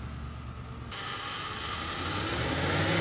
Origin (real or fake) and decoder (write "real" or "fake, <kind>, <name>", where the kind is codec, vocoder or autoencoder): real